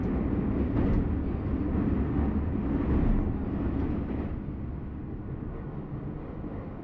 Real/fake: real